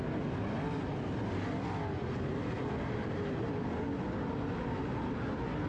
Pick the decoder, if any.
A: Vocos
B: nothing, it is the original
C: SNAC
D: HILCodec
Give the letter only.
B